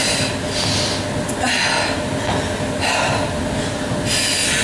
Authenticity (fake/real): real